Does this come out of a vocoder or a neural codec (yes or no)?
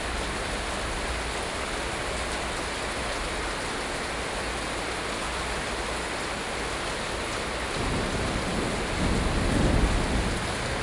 no